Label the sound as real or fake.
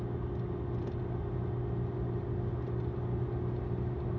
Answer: real